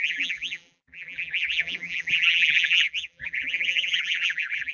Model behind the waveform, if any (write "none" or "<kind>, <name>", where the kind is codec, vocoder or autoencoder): vocoder, BigVGAN v2